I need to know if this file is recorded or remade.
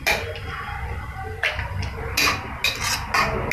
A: recorded